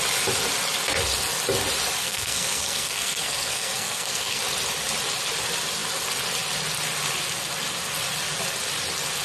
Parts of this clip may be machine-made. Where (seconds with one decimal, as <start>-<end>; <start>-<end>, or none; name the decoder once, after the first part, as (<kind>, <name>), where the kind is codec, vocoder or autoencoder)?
2.0-4.4 (codec, SNAC)